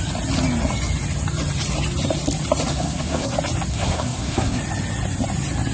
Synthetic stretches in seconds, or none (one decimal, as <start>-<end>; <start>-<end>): 2.7-3.3; 3.7-4.6